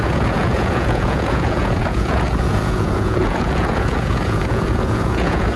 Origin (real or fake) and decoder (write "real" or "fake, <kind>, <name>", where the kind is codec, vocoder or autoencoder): fake, vocoder, Vocos